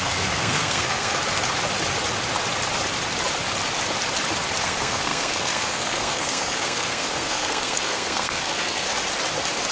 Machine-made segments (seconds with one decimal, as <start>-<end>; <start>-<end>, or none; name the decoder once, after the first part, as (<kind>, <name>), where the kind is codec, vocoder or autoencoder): 0.0-1.1 (codec, SNAC); 4.6-8.9